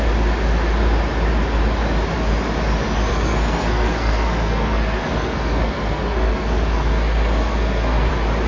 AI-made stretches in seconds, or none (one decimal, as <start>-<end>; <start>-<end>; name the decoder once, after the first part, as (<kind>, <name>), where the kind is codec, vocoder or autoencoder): 3.1-8.1 (codec, SNAC)